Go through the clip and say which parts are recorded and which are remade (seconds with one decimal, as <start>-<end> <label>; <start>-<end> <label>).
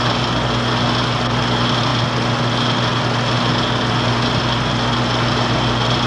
0.0-6.1 recorded